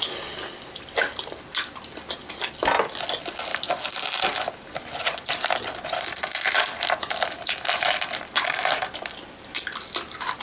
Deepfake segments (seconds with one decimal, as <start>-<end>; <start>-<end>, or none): none